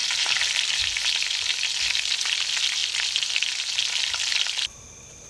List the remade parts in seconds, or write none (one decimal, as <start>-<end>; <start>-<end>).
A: 0.0-0.8